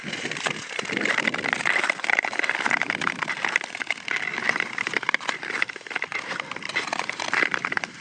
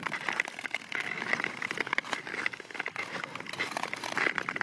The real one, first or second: second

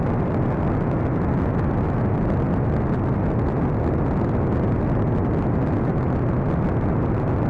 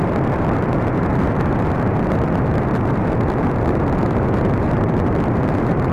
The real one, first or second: first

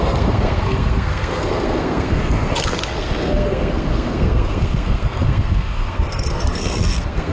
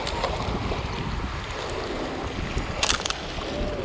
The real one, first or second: second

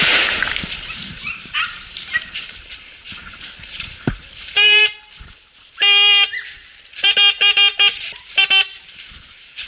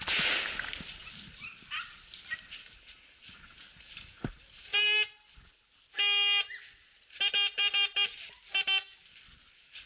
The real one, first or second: second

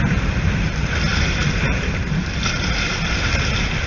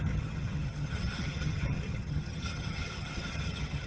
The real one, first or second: first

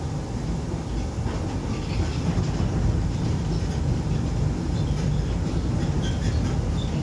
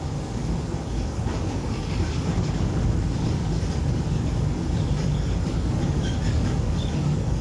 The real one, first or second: first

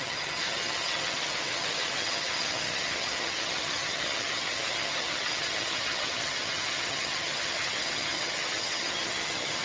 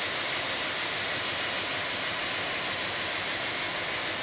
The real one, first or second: second